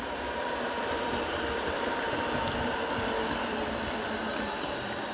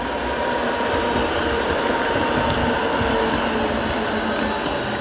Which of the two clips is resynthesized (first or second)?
first